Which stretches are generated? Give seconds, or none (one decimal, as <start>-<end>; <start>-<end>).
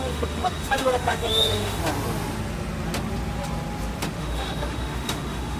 0.0-1.8; 4.2-5.6